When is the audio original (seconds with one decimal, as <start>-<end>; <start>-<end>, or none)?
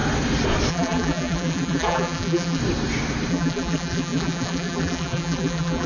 0.0-0.7; 2.6-3.3